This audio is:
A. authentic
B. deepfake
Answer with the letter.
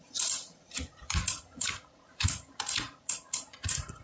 B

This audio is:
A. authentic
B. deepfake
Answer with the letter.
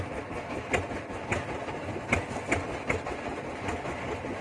A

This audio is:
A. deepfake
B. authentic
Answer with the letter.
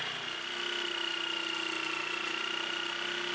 B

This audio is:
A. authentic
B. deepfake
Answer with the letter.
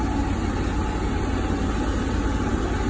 A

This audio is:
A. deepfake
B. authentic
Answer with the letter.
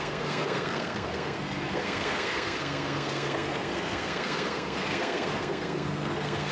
A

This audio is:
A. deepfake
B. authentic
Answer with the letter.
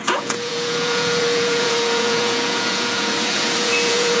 A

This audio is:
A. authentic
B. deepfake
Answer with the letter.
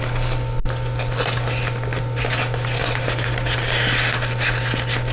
A